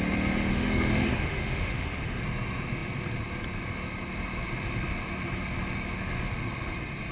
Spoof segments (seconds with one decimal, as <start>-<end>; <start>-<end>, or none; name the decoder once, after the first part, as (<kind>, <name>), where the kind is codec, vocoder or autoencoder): 0.5-2.2 (autoencoder, DAC-VAE)